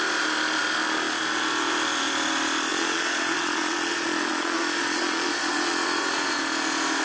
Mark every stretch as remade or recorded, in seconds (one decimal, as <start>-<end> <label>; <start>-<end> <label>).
0.0-2.7 recorded; 2.7-6.4 remade; 6.4-7.0 recorded